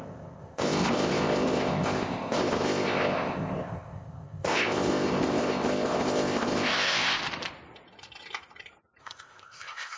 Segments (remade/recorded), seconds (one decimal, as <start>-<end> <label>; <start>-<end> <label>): 0.0-7.2 remade; 7.2-9.0 recorded; 9.0-10.0 remade